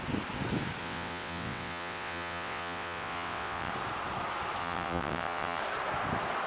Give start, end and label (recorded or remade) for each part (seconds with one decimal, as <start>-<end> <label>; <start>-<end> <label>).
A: 0.0-0.8 recorded; 0.8-3.7 remade; 3.7-4.6 recorded; 4.6-5.6 remade; 5.6-6.5 recorded